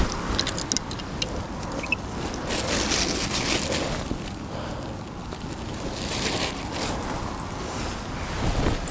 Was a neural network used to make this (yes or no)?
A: no